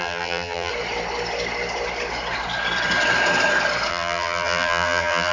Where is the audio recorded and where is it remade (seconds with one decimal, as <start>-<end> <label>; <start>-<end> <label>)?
0.0-0.7 remade; 0.7-3.9 recorded; 3.9-5.3 remade